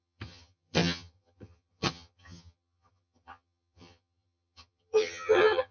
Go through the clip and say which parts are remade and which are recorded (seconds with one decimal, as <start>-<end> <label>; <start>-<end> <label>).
0.0-5.7 remade